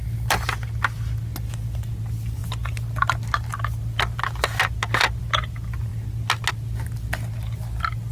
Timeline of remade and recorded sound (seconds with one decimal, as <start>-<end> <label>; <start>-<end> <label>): 0.0-8.1 recorded